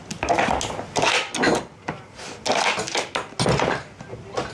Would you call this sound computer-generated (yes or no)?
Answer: no